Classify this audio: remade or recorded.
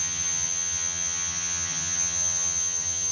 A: remade